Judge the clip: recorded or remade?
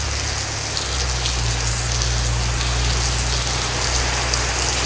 recorded